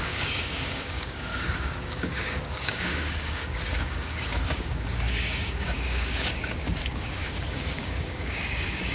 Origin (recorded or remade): remade